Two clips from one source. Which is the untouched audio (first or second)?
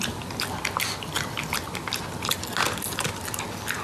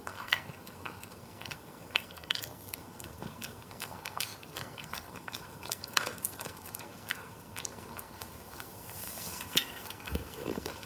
first